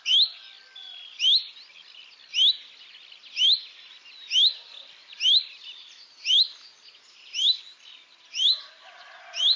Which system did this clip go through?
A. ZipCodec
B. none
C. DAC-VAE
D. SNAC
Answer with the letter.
B